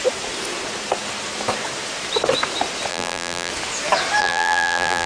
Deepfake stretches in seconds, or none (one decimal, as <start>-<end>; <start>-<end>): 2.9-3.5; 4.2-5.1